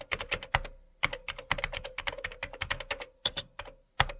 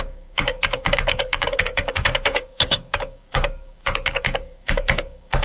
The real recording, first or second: first